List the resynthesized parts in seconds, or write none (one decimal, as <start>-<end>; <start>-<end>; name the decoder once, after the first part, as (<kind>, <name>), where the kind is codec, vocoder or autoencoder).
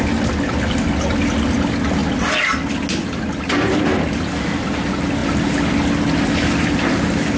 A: none